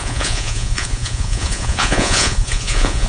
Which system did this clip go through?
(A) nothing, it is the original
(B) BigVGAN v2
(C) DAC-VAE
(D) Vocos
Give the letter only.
D